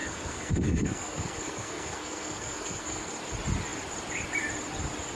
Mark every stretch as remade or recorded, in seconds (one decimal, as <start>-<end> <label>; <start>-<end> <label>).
0.0-3.1 remade; 3.1-5.2 recorded